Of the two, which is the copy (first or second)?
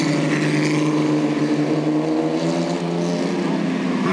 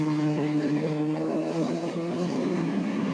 second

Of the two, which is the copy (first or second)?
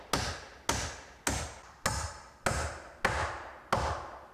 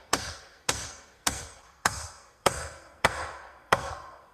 second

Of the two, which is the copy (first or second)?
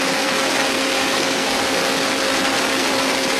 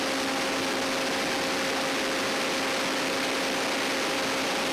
first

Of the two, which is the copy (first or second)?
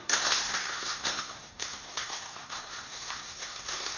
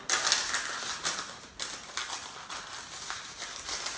first